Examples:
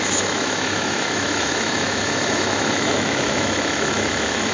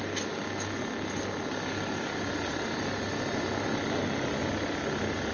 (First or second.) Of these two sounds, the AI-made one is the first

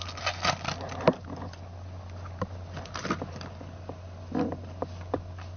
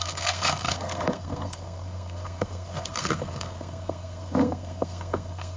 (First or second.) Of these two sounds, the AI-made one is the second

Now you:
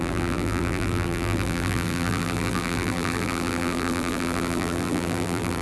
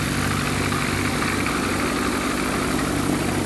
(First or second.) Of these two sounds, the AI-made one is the first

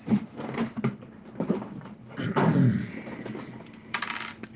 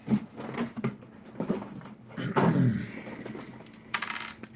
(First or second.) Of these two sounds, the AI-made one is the first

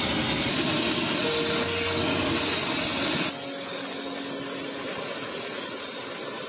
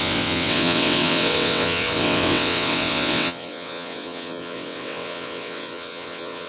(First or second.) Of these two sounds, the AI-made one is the second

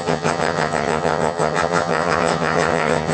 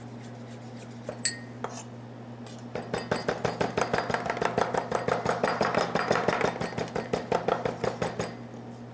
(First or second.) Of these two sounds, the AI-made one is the first